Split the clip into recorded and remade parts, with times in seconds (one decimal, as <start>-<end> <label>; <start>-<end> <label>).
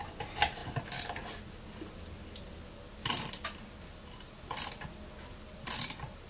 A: 0.0-6.3 recorded